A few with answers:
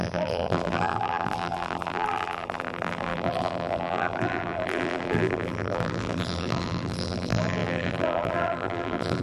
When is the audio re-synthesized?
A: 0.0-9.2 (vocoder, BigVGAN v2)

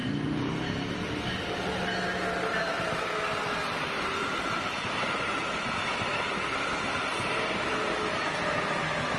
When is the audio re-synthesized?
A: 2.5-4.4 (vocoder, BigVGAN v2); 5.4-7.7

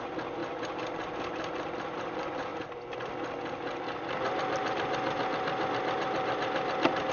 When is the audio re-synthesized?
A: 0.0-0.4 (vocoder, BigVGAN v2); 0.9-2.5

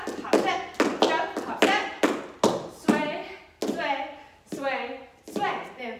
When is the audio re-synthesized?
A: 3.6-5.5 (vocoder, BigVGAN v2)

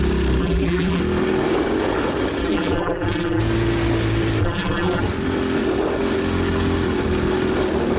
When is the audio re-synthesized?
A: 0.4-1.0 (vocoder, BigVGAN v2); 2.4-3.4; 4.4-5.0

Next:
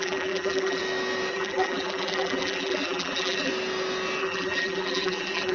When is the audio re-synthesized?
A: 0.0-0.8 (vocoder, BigVGAN v2); 1.3-3.5; 4.2-5.5

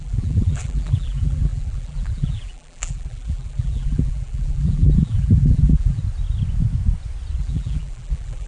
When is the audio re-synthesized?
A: 0.0-6.0 (vocoder, BigVGAN v2); 7.4-8.5

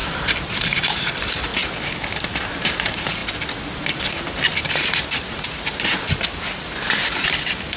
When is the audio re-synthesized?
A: 0.0-1.5 (vocoder, BigVGAN v2); 2.5-3.2; 4.7-7.8